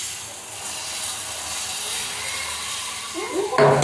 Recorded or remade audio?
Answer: recorded